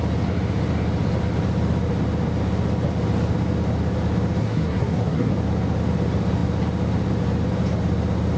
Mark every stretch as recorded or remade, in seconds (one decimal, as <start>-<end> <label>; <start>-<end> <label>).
0.0-4.4 recorded; 4.4-5.3 remade; 5.3-8.4 recorded

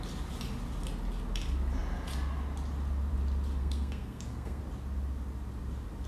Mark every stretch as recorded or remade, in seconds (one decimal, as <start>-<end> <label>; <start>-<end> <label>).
0.0-3.6 recorded; 3.6-4.6 remade; 4.6-6.1 recorded

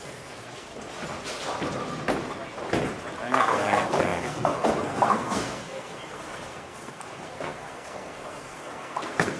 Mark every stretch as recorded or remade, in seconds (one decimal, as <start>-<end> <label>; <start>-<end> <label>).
0.0-0.7 remade; 0.7-3.3 recorded; 3.3-9.4 remade

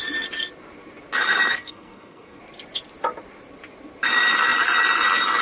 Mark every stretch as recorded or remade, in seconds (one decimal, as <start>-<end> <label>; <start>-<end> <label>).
0.0-1.5 recorded; 1.5-2.4 remade; 2.4-5.4 recorded

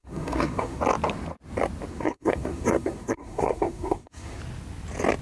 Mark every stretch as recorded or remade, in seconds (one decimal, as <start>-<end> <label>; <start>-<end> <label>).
0.0-0.8 remade; 0.8-1.9 recorded; 1.9-4.4 remade; 4.4-5.2 recorded

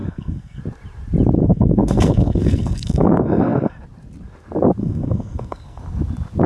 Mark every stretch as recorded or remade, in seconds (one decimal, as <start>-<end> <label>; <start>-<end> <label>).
0.0-0.6 remade; 0.6-1.4 recorded; 1.4-3.8 remade; 3.8-4.8 recorded; 4.8-5.8 remade; 5.8-6.5 recorded